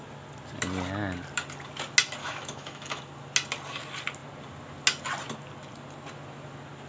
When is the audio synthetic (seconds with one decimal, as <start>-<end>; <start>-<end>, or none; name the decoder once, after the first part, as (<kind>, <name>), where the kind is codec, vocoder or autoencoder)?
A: 2.2-3.0 (autoencoder, DAC-VAE)